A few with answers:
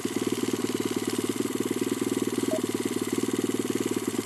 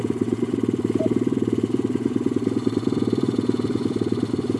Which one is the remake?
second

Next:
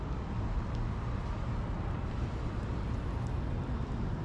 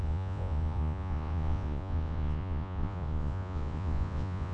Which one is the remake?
second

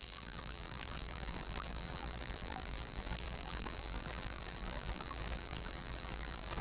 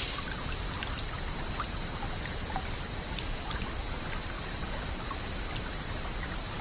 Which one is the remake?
first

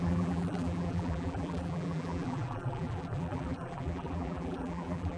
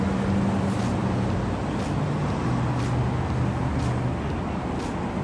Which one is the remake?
first